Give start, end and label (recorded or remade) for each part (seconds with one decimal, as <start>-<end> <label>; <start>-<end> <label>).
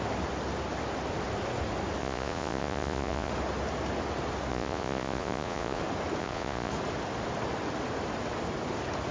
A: 0.0-2.0 recorded; 2.0-3.3 remade; 3.3-4.5 recorded; 4.5-5.8 remade; 5.8-6.2 recorded; 6.2-6.7 remade; 6.7-9.1 recorded